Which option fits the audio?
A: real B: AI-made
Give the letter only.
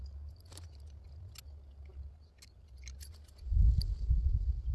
A